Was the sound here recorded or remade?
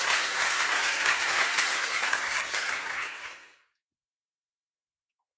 remade